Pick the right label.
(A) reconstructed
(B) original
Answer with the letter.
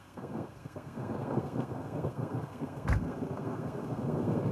A